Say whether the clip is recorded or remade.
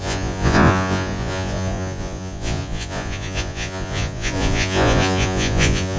remade